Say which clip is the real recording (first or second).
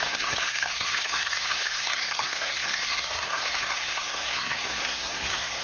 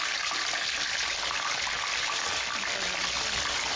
second